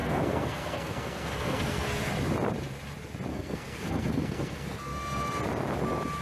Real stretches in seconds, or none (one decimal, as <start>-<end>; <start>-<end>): 2.1-3.3; 5.4-6.2